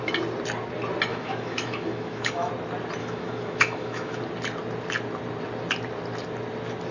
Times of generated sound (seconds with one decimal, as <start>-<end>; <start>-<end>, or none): 1.1-2.5; 3.0-4.2